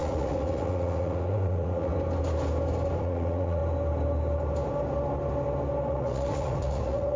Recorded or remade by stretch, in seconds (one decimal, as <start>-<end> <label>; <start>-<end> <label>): 0.0-1.9 remade; 1.9-3.0 recorded; 3.0-3.6 remade; 3.6-5.9 recorded; 5.9-7.2 remade